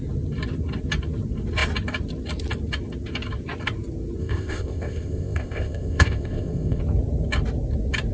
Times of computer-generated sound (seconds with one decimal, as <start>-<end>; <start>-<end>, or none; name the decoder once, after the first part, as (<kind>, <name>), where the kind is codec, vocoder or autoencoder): 4.2-6.8 (codec, ZipCodec)